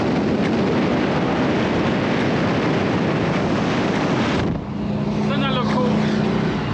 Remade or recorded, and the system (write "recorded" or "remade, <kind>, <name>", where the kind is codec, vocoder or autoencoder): recorded